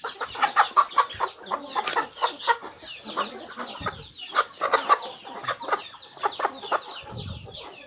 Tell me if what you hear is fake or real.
real